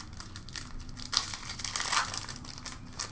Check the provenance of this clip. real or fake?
real